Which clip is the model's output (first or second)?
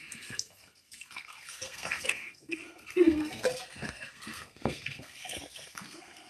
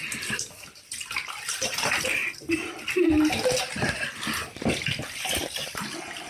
first